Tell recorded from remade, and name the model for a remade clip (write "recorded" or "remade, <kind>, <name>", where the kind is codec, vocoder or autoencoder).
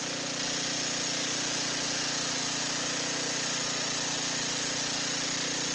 recorded